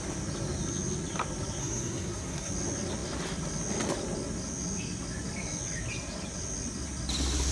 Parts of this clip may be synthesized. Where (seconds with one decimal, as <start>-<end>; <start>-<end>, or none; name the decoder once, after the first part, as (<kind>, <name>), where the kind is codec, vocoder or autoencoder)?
1.6-2.5 (codec, SNAC)